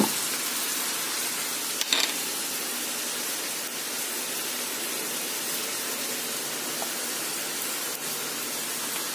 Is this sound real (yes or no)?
yes